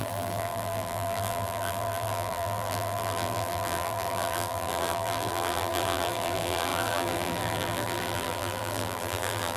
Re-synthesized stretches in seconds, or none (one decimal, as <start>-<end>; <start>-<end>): 0.0-9.6